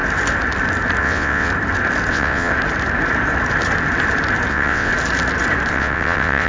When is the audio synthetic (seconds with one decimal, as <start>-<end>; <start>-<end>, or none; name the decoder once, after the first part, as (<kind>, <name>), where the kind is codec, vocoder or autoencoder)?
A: 1.0-1.5 (vocoder, WaveNeXt); 2.1-2.5; 4.5-4.9; 5.7-6.5